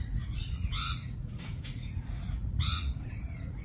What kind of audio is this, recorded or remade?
remade